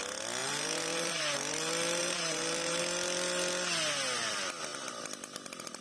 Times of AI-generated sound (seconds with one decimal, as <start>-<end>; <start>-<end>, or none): 0.4-1.2; 2.0-2.8